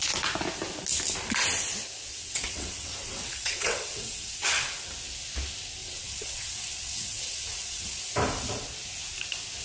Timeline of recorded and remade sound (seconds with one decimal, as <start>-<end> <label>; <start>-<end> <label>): 0.0-2.1 recorded; 2.1-4.9 remade; 4.9-5.8 recorded; 5.8-8.0 remade; 8.0-9.6 recorded